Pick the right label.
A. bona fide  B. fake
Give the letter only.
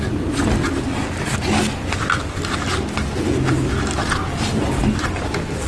A